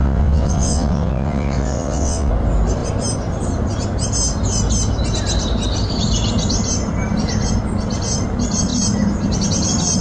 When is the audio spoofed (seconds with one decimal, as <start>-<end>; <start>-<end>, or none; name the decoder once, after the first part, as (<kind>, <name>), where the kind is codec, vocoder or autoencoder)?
0.0-2.3 (vocoder, WaveNeXt)